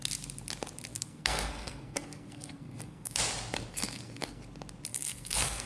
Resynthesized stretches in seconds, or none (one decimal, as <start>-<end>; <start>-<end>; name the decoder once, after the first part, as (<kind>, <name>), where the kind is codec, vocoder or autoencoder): 0.9-3.2 (codec, SNAC); 3.7-4.4; 4.9-5.7